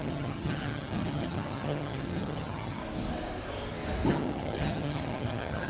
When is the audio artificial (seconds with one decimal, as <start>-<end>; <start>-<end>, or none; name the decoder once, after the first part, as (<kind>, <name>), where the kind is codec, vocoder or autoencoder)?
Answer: 0.0-2.8 (vocoder, HiFi-GAN); 4.1-5.7

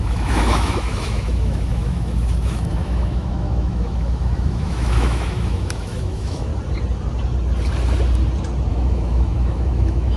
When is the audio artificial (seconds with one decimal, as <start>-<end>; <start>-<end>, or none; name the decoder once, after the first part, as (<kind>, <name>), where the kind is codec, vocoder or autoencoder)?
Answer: 0.0-6.5 (autoencoder, DAC-VAE); 8.7-10.2

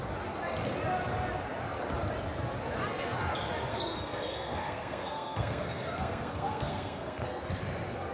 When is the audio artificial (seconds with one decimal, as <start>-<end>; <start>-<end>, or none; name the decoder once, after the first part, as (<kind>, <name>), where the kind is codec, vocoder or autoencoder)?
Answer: 3.7-7.5 (codec, SNAC)

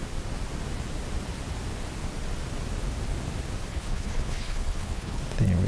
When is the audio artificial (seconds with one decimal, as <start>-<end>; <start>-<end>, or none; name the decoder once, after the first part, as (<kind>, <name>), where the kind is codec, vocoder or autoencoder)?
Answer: 3.7-5.2 (codec, HILCodec)

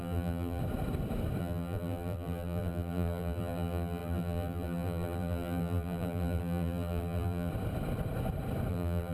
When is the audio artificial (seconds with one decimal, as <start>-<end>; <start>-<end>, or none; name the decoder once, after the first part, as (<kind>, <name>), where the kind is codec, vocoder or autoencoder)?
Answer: 0.0-0.6 (vocoder, BigVGAN v2); 1.4-7.5; 8.7-9.1